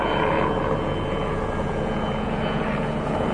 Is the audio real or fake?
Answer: fake